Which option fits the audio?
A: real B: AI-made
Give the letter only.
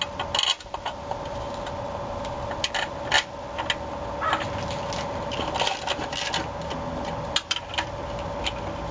A